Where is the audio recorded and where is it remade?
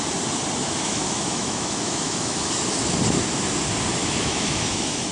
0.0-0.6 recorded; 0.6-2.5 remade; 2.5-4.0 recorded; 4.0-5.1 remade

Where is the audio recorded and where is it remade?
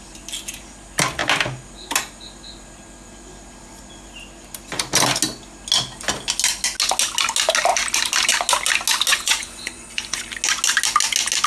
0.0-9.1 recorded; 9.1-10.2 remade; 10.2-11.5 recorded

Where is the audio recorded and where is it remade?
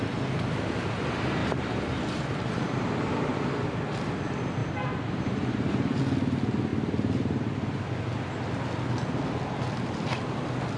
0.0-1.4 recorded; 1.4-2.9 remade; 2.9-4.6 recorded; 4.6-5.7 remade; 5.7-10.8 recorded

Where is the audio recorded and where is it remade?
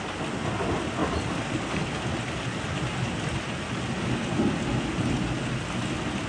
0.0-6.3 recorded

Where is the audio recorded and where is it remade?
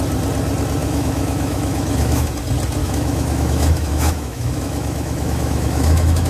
0.0-0.8 recorded; 0.8-2.3 remade; 2.3-2.8 recorded; 2.8-6.3 remade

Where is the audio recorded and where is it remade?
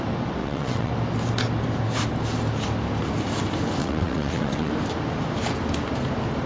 0.0-0.4 recorded; 0.4-0.9 remade; 0.9-3.8 recorded; 3.8-4.7 remade; 4.7-6.5 recorded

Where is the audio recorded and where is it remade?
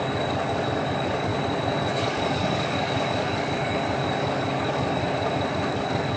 0.0-1.3 remade; 1.3-1.9 recorded; 1.9-5.0 remade; 5.0-5.7 recorded; 5.7-6.2 remade